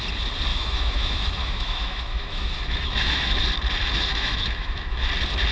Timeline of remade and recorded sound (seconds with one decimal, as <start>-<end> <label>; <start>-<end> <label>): 0.0-0.5 recorded; 0.5-3.4 remade; 3.4-4.1 recorded; 4.1-5.1 remade; 5.1-5.5 recorded